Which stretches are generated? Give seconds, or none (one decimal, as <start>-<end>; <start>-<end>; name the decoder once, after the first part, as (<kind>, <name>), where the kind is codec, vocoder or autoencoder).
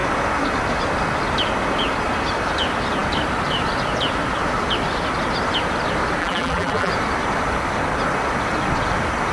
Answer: 6.2-6.9 (vocoder, BigVGAN v2)